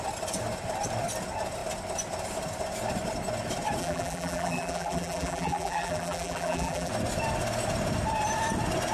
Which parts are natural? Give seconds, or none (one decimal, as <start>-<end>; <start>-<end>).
0.0-3.8; 6.9-8.9